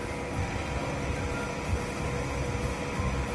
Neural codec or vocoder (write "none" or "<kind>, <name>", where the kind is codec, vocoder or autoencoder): none